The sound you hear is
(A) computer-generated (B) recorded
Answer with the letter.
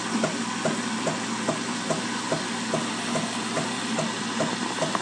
B